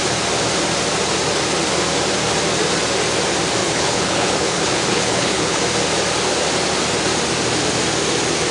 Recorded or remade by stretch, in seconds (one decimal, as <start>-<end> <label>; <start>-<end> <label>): 0.0-3.6 recorded; 3.6-5.6 remade; 5.6-8.5 recorded